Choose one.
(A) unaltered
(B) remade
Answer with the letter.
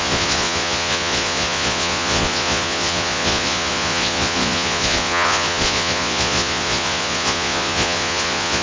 B